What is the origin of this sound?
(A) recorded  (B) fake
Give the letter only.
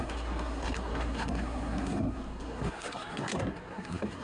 B